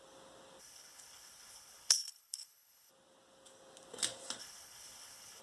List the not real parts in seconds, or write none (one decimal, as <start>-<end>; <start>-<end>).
0.6-2.9; 4.4-5.4